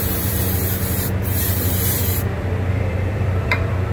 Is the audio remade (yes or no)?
yes